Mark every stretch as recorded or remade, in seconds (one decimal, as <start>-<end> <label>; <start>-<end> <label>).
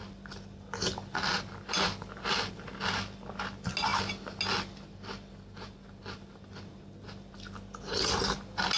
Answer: 0.0-8.8 recorded